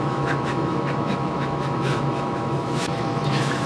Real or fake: fake